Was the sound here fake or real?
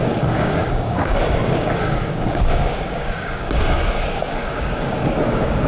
fake